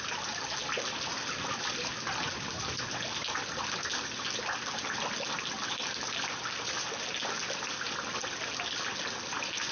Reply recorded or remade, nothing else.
recorded